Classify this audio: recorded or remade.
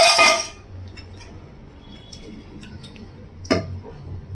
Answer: remade